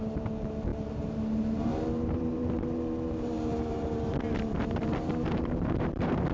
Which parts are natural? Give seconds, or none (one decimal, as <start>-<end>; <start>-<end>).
none